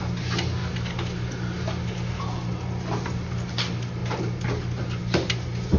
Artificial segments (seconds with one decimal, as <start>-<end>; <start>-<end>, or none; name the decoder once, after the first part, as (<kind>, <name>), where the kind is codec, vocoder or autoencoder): none